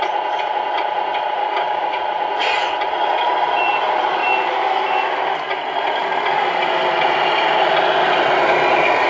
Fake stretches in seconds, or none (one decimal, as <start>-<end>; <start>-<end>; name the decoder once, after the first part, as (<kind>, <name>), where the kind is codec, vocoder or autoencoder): 1.4-2.0 (codec, DAC)